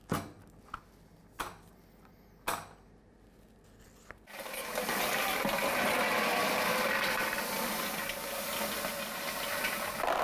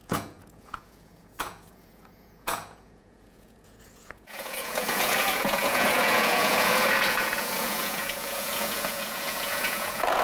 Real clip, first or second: first